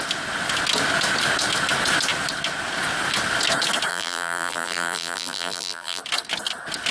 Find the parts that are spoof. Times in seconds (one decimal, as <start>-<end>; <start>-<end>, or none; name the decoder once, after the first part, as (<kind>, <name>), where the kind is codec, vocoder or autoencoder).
3.9-6.0 (vocoder, BigVGAN v2)